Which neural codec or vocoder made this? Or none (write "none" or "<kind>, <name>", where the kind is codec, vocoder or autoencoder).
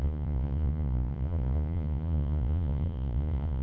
vocoder, Vocos